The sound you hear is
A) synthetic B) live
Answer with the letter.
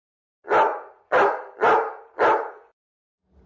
B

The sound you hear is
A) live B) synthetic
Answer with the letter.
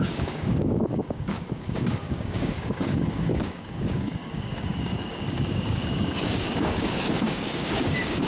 B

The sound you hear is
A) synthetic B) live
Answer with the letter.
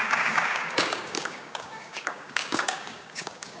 A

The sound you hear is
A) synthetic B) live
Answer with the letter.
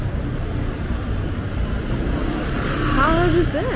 B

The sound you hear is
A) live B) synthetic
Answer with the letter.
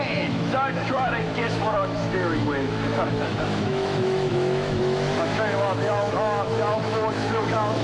B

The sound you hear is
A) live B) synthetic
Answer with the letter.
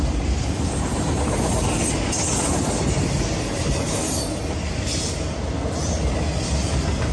A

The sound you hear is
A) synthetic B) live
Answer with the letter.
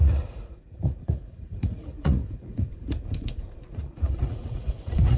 A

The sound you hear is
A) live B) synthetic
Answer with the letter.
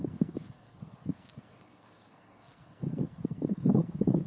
B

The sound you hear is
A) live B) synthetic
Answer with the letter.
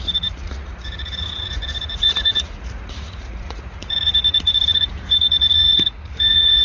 B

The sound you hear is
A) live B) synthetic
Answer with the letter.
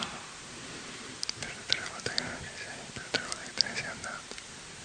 B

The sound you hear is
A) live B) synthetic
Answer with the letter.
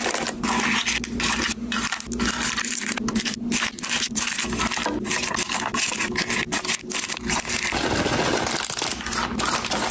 A